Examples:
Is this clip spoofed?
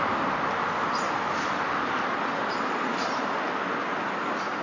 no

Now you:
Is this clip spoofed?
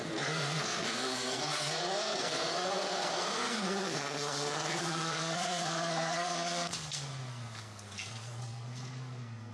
yes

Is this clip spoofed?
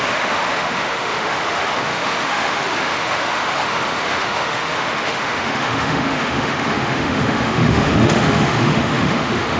yes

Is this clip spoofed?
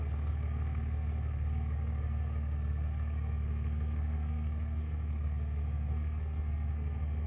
yes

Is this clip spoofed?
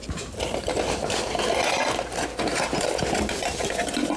no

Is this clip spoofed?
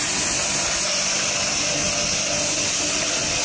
no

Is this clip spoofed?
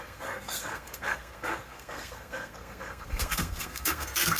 yes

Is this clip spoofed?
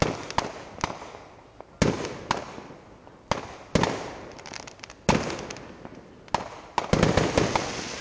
no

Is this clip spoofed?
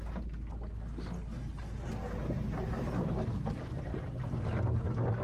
no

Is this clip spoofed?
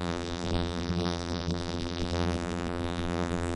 yes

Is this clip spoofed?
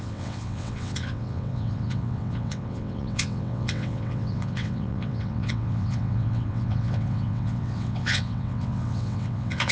yes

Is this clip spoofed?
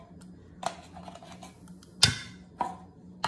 no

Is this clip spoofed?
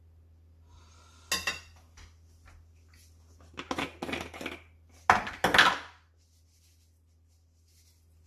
no